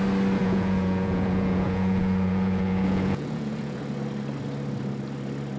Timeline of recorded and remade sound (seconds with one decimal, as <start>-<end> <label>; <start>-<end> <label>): 0.0-0.4 recorded; 0.4-3.8 remade; 3.8-5.6 recorded